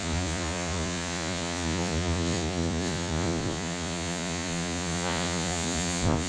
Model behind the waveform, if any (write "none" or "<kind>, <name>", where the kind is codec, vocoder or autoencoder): vocoder, Vocos